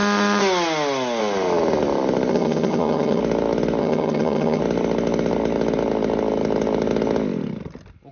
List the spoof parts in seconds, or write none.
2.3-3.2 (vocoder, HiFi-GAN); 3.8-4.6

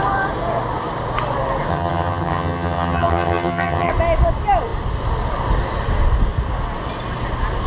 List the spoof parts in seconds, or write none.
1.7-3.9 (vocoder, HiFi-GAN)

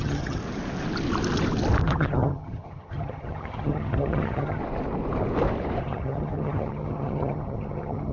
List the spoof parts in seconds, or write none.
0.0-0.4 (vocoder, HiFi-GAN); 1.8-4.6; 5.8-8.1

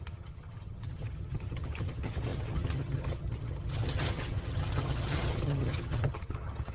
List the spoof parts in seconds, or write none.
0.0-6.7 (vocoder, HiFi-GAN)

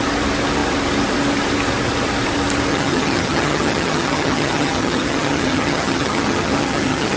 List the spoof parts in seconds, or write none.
2.7-7.2 (vocoder, HiFi-GAN)

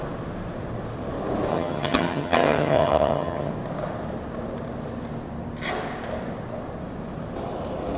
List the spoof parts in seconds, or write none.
1.5-3.5 (vocoder, HiFi-GAN)

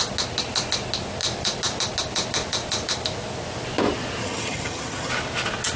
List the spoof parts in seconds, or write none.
4.2-5.1 (vocoder, HiFi-GAN)

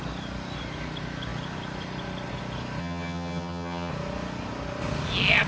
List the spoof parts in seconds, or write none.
2.8-3.9 (vocoder, HiFi-GAN)